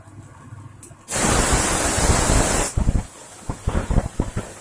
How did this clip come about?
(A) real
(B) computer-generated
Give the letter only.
A